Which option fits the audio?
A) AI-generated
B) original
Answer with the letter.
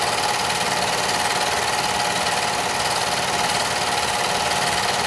B